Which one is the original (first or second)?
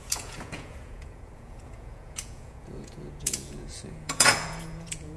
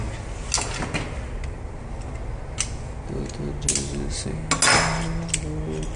second